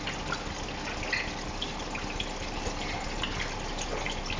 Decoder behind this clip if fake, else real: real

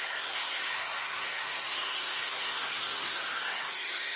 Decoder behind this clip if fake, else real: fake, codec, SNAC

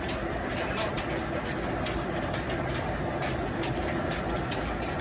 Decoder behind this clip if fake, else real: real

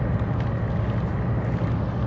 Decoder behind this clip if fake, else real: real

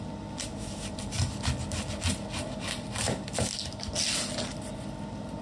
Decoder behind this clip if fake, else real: real